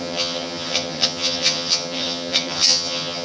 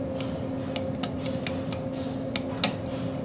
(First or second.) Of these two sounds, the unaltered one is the second